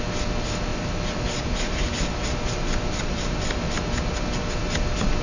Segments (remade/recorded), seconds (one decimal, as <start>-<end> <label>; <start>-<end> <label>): 0.0-0.7 recorded; 0.7-3.8 remade; 3.8-5.2 recorded